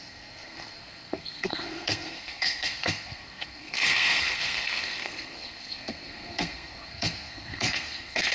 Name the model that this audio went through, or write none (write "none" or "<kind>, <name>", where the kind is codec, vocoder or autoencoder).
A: codec, SNAC